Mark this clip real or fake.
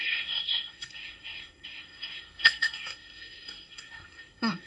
fake